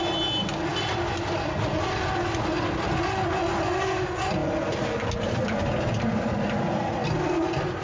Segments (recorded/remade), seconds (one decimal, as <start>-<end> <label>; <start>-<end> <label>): 0.0-7.8 recorded